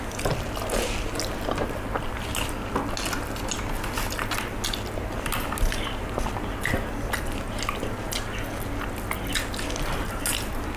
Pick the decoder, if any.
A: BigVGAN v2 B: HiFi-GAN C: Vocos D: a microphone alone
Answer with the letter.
D